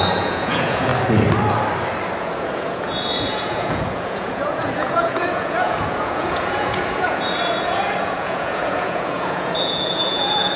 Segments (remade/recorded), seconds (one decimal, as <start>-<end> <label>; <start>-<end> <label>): 0.0-0.9 remade; 0.9-2.2 recorded; 2.2-10.6 remade